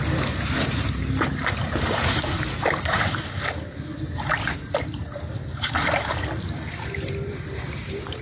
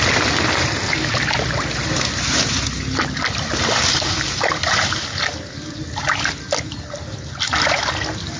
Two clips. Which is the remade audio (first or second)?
first